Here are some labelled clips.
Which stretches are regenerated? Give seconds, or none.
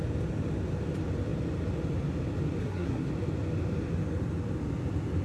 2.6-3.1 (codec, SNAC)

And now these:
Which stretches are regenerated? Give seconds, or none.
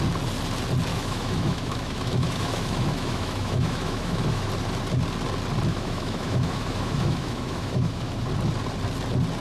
0.9-4.5 (autoencoder, DAC-VAE); 5.7-8.1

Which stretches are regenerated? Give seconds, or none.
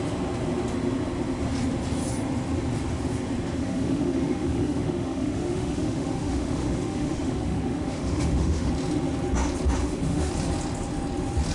3.6-8.7 (autoencoder, DAC-VAE); 9.8-10.3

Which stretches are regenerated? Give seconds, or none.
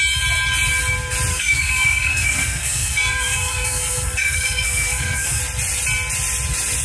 1.3-5.4 (codec, SNAC)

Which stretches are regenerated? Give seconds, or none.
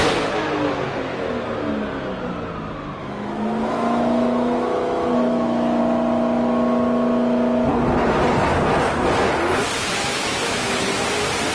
3.0-5.8 (autoencoder, DAC-VAE); 9.9-11.0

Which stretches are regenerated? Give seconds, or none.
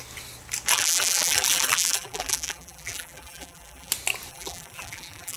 0.7-3.9 (vocoder, BigVGAN v2); 4.3-5.4